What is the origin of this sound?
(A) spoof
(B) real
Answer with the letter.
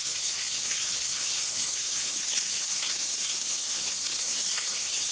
A